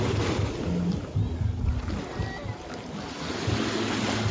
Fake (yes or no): no